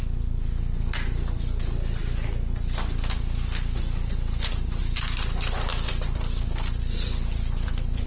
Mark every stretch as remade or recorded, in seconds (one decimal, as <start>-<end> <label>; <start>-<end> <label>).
0.0-8.1 recorded